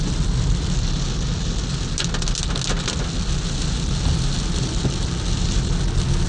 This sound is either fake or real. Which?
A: real